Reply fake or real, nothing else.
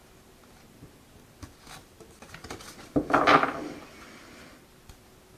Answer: real